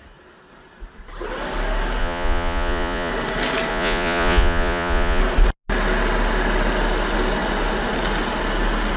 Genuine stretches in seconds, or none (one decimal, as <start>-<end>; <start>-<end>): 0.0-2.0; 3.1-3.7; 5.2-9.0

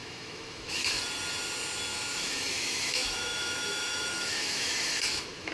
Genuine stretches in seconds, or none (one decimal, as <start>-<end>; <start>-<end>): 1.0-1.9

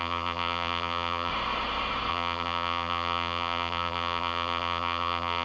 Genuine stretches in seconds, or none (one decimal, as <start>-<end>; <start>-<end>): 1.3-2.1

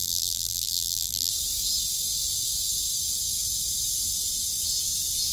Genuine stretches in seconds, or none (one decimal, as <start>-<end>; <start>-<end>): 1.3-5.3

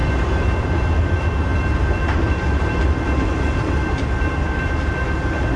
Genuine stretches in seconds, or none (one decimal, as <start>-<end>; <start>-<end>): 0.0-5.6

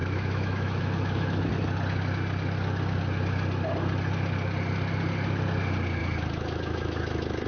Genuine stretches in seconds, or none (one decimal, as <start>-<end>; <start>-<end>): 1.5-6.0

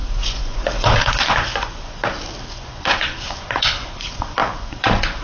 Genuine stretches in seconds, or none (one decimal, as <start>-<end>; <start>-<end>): 2.0-2.5